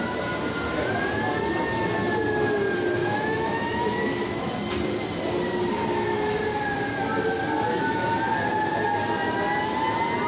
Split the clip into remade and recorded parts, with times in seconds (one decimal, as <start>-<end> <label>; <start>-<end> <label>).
0.0-3.0 recorded; 3.0-4.5 remade; 4.5-10.3 recorded